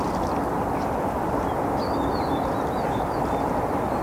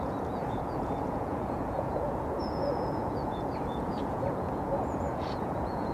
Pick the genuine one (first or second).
first